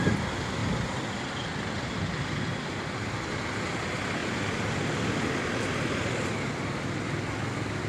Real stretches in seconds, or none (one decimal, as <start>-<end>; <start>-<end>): 0.0-7.9